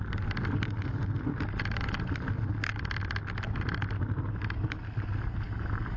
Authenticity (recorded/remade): recorded